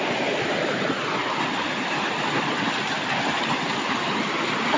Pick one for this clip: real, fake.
real